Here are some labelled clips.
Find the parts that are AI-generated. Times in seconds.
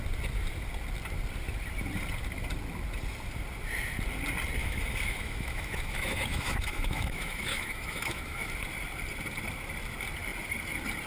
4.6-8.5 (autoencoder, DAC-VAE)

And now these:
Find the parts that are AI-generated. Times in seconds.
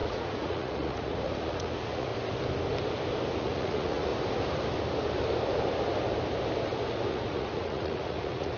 0.0-2.1 (vocoder, Vocos); 3.3-4.1; 7.1-8.6